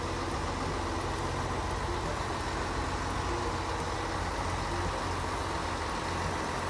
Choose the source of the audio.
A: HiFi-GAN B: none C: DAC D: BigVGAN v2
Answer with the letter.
B